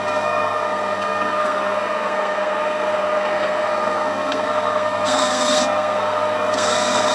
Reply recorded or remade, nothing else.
remade